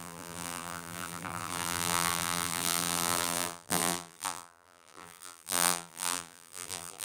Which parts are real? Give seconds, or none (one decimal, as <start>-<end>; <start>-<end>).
none